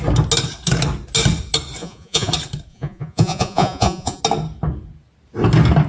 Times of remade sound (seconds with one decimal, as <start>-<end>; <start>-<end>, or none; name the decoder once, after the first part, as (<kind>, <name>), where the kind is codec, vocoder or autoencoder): 1.8-2.3 (vocoder, Vocos); 2.7-4.2